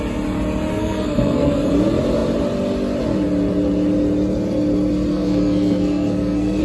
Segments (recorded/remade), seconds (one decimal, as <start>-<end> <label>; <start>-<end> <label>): 0.0-0.7 recorded; 0.7-1.7 remade; 1.7-5.1 recorded; 5.1-6.6 remade